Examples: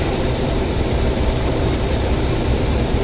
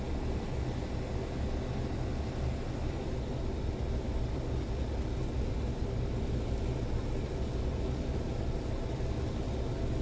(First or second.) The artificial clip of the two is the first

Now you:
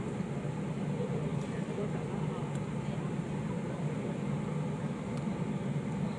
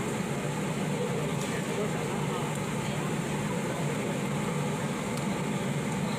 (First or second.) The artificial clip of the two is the first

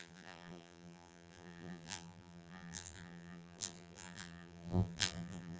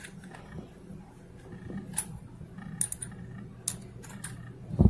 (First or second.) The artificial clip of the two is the first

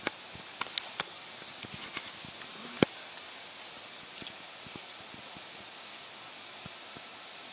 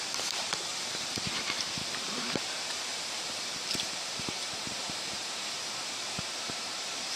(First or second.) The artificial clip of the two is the second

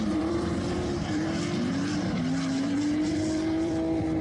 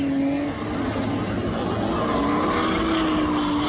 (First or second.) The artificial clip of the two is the first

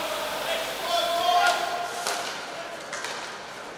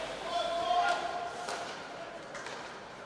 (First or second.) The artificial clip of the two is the second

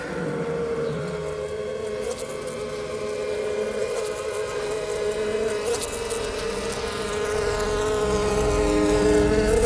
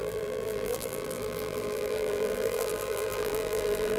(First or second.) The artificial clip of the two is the second